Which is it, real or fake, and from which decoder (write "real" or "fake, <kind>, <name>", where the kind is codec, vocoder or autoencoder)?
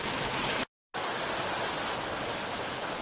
real